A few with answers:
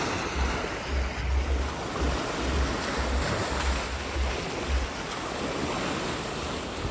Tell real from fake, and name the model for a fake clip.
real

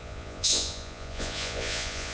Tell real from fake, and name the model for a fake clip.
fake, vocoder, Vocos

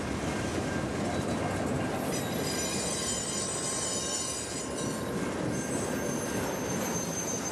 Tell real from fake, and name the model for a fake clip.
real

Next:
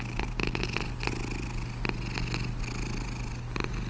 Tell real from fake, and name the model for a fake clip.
real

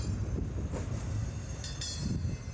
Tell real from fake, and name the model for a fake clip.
real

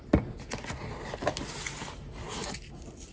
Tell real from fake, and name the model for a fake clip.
real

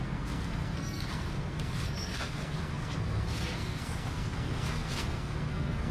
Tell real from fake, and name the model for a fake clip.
fake, codec, SNAC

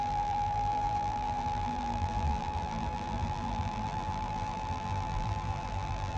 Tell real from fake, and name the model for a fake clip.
fake, vocoder, BigVGAN v2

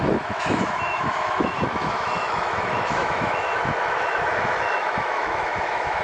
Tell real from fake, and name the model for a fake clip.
fake, autoencoder, DAC-VAE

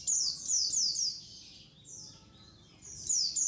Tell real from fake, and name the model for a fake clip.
real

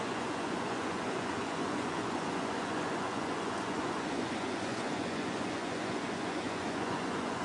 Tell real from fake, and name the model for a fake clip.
fake, vocoder, Vocos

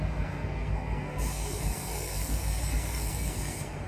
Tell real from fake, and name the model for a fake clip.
fake, codec, SNAC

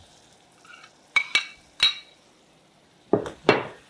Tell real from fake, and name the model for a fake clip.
real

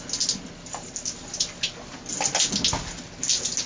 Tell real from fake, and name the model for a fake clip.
real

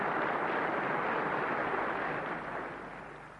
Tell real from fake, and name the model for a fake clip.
real